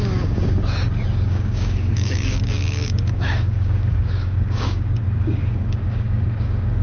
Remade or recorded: remade